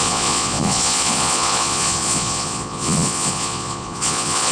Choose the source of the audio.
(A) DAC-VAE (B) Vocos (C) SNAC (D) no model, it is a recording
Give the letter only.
B